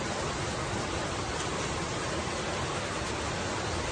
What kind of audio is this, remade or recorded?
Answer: recorded